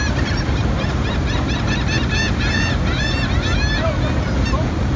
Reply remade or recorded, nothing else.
recorded